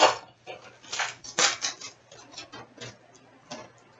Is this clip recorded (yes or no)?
yes